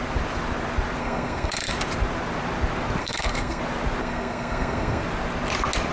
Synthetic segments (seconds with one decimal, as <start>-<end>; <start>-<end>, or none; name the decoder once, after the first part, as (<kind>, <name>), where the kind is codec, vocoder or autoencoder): 1.0-1.7 (codec, SNAC); 3.0-3.6; 4.0-5.0